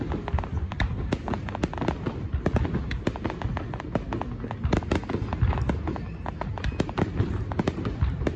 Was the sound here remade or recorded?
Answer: recorded